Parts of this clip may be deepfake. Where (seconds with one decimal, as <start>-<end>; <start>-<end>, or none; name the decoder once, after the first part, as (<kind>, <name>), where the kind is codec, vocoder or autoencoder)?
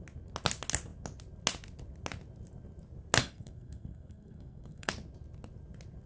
3.2-4.9 (codec, SNAC)